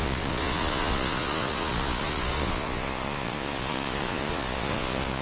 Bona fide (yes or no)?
no